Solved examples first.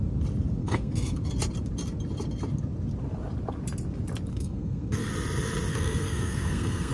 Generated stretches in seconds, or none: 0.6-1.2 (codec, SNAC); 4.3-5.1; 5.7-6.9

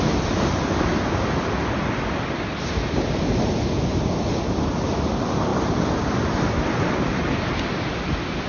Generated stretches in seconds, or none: none

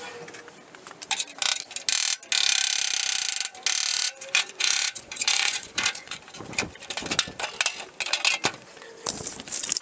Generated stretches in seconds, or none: 3.9-6.2 (vocoder, Vocos)